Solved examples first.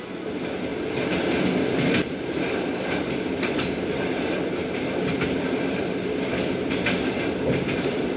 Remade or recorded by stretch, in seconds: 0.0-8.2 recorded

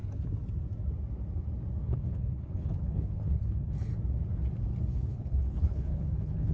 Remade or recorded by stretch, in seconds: 0.0-1.8 recorded; 1.8-3.9 remade; 3.9-4.9 recorded; 4.9-6.5 remade

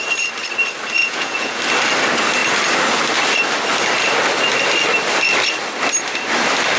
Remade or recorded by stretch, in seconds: 0.0-1.0 recorded; 1.0-1.6 remade; 1.6-6.8 recorded

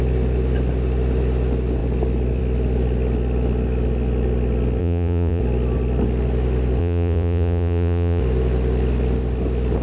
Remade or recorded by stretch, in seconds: 0.0-4.8 recorded; 4.8-5.4 remade; 5.4-6.8 recorded; 6.8-8.2 remade; 8.2-9.8 recorded

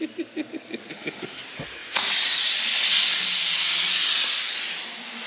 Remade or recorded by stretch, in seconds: 0.0-0.9 recorded; 0.9-1.4 remade; 1.4-5.3 recorded

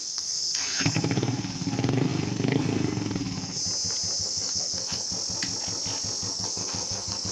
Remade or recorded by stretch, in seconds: 0.0-3.6 remade; 3.6-4.2 recorded; 4.2-5.1 remade; 5.1-6.3 recorded; 6.3-7.3 remade